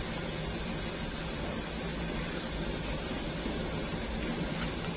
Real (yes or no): yes